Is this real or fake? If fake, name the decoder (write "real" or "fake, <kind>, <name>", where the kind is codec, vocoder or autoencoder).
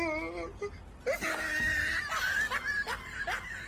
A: real